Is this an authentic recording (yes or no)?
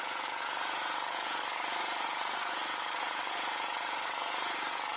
no